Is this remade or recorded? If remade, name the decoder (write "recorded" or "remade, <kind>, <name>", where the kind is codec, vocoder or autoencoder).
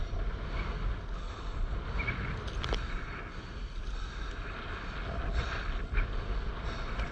recorded